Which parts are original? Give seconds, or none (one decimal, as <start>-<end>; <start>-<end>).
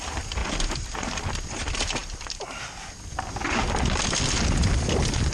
0.0-0.4; 1.2-5.3